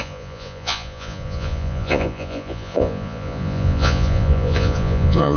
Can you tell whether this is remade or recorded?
remade